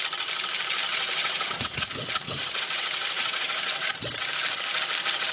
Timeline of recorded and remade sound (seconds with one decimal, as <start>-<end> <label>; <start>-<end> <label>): 0.0-0.9 recorded; 0.9-3.9 remade; 3.9-5.3 recorded